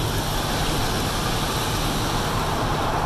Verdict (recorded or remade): recorded